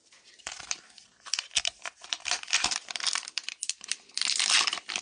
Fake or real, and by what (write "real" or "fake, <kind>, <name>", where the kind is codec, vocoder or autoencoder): fake, vocoder, BigVGAN v2